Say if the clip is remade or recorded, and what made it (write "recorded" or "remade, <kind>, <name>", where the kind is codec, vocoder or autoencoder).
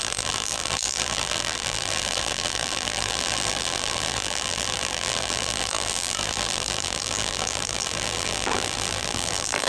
remade, vocoder, BigVGAN v2